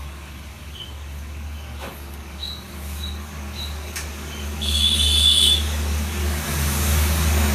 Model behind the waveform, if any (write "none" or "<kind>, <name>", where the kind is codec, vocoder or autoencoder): codec, DAC